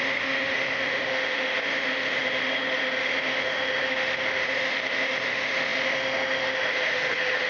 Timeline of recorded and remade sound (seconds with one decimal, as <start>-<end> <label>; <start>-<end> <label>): 0.0-7.5 remade